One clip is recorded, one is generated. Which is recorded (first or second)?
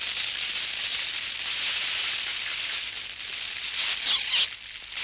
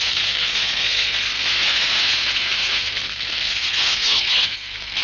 first